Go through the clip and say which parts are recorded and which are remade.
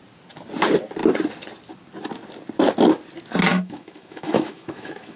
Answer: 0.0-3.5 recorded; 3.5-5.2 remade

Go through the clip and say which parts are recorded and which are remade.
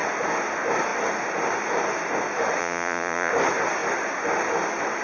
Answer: 0.0-2.6 recorded; 2.6-3.3 remade; 3.3-5.0 recorded